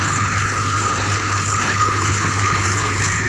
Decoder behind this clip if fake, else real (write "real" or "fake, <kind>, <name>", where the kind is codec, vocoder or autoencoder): fake, codec, HILCodec